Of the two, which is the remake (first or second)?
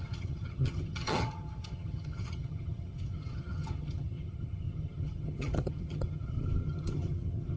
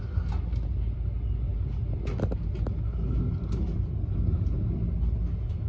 first